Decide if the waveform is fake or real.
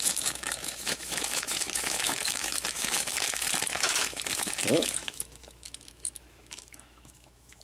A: fake